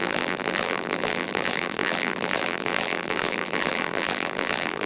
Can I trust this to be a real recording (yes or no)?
no